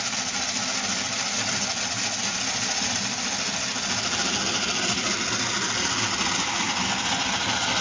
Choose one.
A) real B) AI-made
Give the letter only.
A